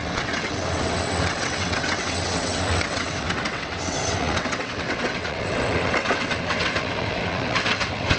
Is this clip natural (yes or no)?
no